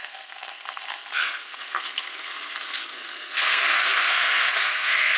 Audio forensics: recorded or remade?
remade